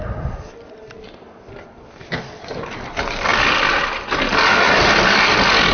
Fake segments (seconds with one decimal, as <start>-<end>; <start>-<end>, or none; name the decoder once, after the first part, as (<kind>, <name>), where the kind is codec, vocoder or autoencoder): none